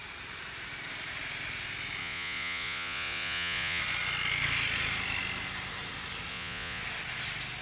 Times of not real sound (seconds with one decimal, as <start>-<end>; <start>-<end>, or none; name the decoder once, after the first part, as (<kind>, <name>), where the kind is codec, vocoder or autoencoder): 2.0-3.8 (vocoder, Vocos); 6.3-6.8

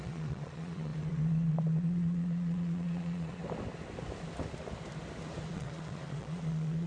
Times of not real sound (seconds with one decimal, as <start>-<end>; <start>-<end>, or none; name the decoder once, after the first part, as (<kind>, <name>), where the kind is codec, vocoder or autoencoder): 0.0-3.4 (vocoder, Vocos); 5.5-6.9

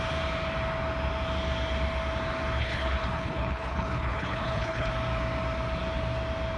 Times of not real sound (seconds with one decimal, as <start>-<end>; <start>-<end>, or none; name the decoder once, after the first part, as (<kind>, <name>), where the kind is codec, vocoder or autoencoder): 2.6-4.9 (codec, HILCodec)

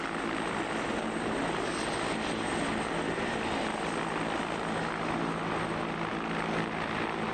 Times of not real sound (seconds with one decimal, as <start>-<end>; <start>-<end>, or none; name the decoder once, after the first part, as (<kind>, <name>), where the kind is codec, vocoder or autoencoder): none

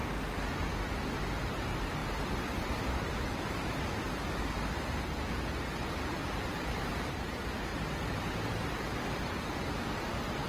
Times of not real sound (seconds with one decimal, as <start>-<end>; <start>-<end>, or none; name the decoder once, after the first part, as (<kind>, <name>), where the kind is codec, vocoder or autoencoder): 2.0-3.9 (vocoder, BigVGAN v2); 6.2-7.3; 7.7-8.4

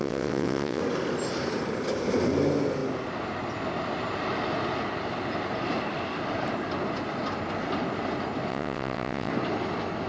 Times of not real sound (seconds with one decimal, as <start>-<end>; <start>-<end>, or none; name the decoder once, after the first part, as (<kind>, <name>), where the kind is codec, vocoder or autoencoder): 0.0-0.8 (vocoder, WaveNeXt); 8.5-9.3

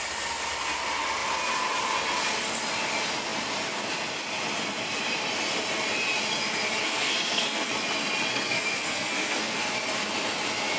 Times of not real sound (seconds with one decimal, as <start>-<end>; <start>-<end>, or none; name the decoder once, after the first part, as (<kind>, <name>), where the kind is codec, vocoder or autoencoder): 6.8-7.7 (codec, SNAC); 8.3-9.6

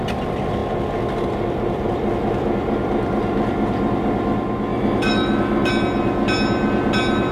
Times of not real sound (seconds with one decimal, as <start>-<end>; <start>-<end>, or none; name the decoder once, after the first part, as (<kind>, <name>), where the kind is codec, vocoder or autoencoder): 4.7-5.7 (autoencoder, DAC-VAE)